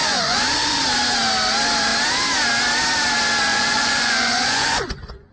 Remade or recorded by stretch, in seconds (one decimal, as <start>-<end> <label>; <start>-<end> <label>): 0.0-0.8 remade; 0.8-3.5 recorded; 3.5-5.3 remade